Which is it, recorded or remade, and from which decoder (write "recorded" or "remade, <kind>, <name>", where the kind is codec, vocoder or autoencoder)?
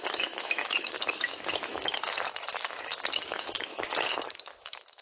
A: remade, autoencoder, DAC-VAE